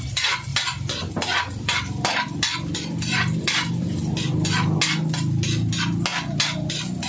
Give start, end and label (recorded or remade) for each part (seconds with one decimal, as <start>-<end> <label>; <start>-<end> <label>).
0.0-0.5 recorded; 0.5-4.8 remade; 4.8-7.1 recorded